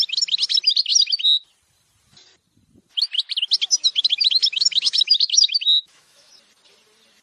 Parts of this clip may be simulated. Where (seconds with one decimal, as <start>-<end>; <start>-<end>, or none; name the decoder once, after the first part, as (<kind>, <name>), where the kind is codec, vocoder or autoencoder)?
4.4-6.3 (autoencoder, DAC-VAE)